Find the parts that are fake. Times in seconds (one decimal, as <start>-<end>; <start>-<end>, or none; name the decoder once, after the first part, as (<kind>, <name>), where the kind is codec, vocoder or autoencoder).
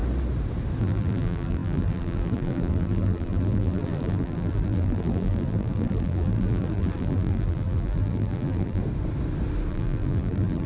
0.8-8.8 (vocoder, BigVGAN v2); 9.7-10.7